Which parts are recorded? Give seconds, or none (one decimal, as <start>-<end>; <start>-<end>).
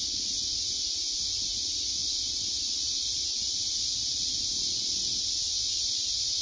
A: 0.0-6.4